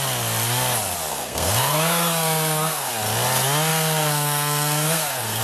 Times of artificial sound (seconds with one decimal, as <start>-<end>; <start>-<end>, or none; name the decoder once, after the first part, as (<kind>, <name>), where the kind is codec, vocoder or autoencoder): 1.1-2.9 (codec, SNAC); 3.7-5.4

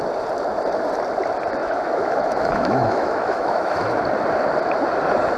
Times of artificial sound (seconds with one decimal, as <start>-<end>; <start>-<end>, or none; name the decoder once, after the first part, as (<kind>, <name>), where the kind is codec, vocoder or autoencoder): 1.6-4.0 (autoencoder, DAC-VAE)

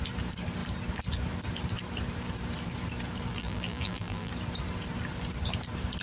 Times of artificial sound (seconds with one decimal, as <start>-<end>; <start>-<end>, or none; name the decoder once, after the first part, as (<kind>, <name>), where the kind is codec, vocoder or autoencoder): 3.3-4.3 (vocoder, BigVGAN v2)

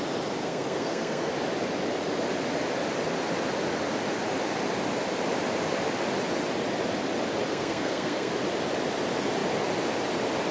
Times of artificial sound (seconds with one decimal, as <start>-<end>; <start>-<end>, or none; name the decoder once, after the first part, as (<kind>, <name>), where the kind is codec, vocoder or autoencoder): 0.4-1.3 (codec, SNAC); 7.5-8.3

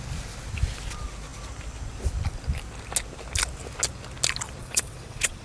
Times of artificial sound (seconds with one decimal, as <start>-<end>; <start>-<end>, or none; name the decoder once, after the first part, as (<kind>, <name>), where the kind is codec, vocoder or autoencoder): 4.6-5.4 (vocoder, WaveNeXt)

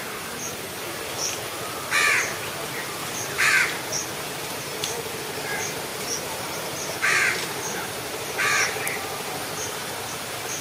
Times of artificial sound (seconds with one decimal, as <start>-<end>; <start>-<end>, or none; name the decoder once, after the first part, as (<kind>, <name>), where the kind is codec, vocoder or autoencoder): 3.0-3.5 (vocoder, BigVGAN v2); 4.0-5.4; 5.9-8.8